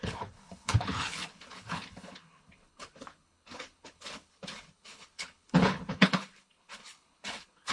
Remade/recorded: remade